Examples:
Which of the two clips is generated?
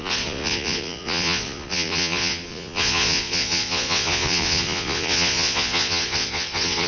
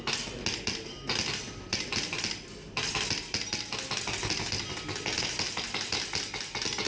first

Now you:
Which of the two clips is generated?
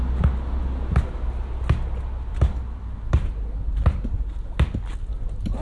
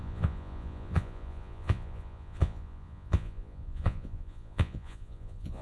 second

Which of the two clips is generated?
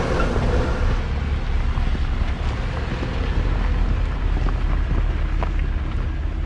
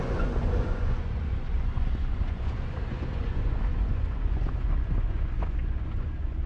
second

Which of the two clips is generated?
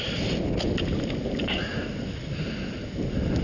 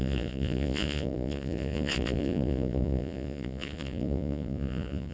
second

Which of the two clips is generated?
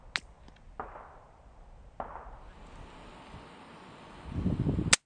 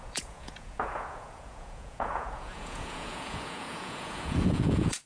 second